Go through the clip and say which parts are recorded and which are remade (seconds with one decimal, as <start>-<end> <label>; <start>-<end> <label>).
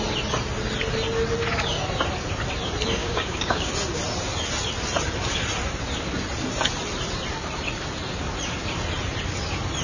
0.0-3.0 recorded; 3.0-3.7 remade; 3.7-9.8 recorded